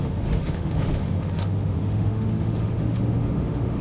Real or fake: fake